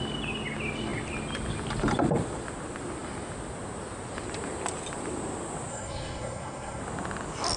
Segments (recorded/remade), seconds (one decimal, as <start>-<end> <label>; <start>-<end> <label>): 0.0-5.7 recorded; 5.7-6.8 remade; 6.8-7.6 recorded